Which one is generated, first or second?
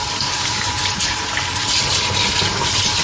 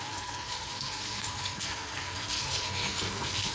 second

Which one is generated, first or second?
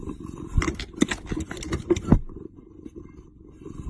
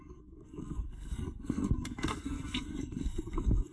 second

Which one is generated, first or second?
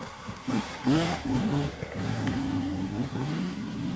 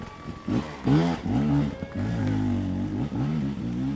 first